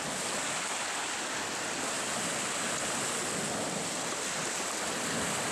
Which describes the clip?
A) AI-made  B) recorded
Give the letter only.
B